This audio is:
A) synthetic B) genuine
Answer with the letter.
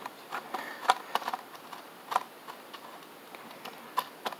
A